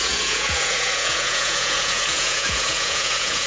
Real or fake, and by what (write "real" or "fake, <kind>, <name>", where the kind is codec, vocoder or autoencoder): fake, vocoder, Vocos